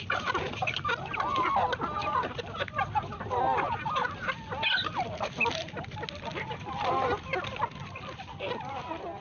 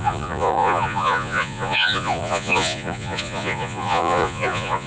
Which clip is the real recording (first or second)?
first